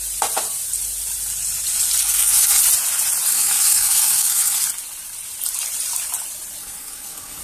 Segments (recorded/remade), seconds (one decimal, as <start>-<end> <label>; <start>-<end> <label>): 0.0-2.0 recorded; 2.0-2.6 remade; 2.6-3.3 recorded; 3.3-4.6 remade; 4.6-6.6 recorded; 6.6-7.4 remade